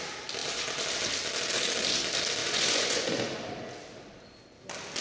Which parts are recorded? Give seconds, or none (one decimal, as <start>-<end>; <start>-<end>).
0.0-2.4; 3.1-5.0